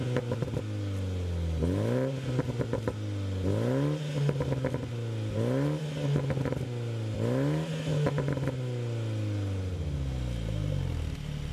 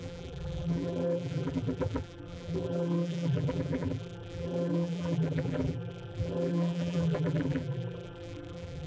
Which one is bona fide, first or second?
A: first